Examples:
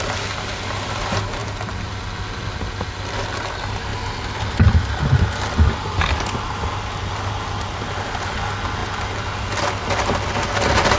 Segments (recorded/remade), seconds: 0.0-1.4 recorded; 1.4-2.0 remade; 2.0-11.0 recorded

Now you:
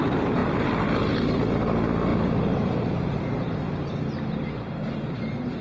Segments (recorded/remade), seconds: 0.0-0.4 recorded; 0.4-1.1 remade; 1.1-2.1 recorded; 2.1-5.1 remade; 5.1-5.6 recorded

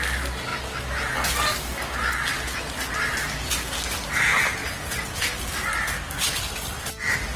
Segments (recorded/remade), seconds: 0.0-4.6 recorded; 4.6-5.3 remade; 5.3-7.4 recorded